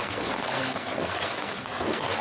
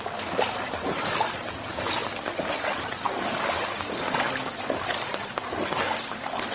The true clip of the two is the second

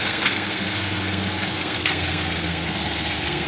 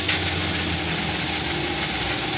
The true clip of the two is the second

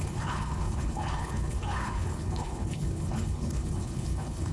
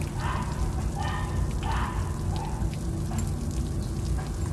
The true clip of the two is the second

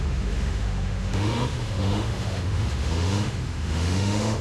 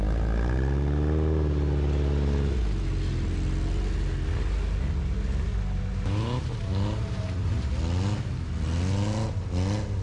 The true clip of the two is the second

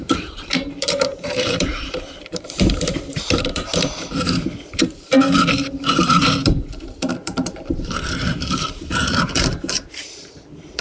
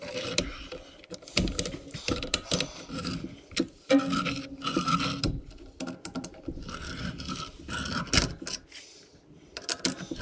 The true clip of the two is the second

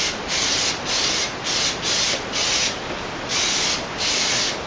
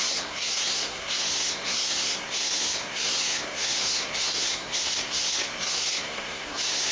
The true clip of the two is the first